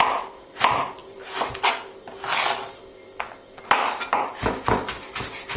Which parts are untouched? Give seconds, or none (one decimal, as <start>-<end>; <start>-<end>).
0.0-5.6